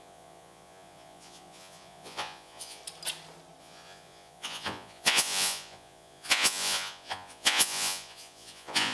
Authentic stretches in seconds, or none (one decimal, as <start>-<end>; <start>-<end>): 2.8-3.6